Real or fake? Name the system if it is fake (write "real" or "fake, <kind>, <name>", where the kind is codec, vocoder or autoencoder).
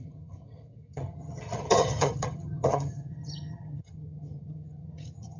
fake, vocoder, HiFi-GAN